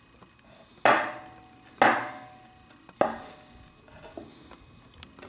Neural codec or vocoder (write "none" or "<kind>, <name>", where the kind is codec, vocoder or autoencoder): none